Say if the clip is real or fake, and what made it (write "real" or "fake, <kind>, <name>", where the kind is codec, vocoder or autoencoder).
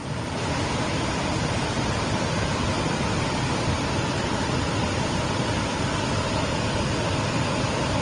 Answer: fake, vocoder, BigVGAN v2